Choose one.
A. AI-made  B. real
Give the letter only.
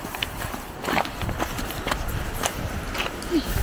A